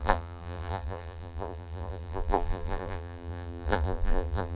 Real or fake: fake